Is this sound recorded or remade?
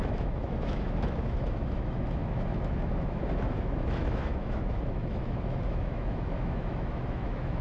remade